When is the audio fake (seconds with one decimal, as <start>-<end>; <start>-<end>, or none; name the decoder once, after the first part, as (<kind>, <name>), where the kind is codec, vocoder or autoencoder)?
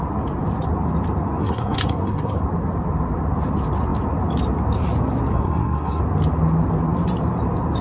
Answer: 1.4-2.4 (codec, SNAC); 5.3-6.0